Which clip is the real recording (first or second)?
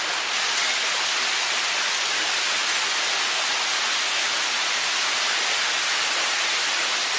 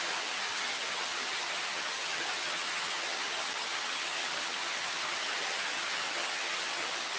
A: first